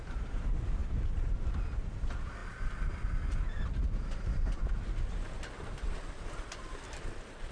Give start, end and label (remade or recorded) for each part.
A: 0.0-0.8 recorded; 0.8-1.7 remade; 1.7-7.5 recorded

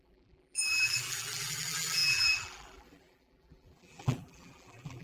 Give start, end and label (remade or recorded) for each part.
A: 0.0-5.0 remade

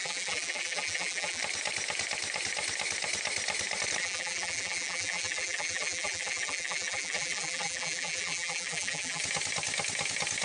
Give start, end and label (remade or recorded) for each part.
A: 0.0-1.4 remade; 1.4-4.0 recorded; 4.0-9.2 remade; 9.2-10.4 recorded